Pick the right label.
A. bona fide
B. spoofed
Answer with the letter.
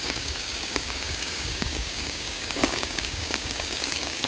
B